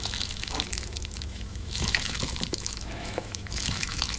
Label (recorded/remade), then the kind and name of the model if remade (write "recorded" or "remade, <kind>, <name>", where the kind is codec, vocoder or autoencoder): remade, autoencoder, DAC-VAE